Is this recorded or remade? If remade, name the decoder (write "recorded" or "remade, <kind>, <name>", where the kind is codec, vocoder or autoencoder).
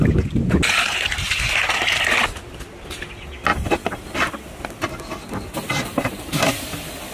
recorded